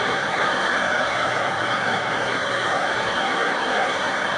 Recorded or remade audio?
remade